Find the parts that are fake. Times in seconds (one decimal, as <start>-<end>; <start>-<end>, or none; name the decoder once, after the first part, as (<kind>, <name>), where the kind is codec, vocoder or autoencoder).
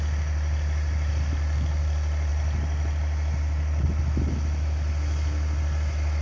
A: none